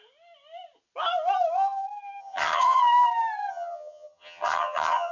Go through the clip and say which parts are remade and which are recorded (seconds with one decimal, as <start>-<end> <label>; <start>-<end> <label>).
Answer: 0.0-2.2 recorded; 2.2-2.8 remade; 2.8-3.5 recorded; 3.5-5.1 remade